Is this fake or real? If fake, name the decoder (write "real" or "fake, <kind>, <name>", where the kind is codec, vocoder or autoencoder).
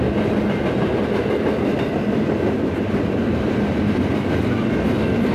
real